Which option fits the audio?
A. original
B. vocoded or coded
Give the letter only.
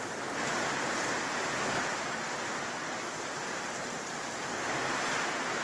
B